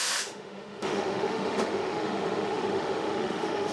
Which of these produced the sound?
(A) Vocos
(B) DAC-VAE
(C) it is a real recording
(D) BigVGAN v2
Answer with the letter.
B